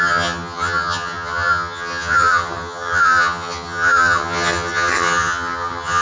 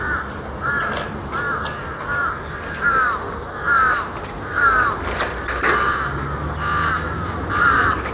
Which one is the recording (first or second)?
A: second